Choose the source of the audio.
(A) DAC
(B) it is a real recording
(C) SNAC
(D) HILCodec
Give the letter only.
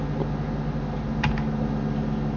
B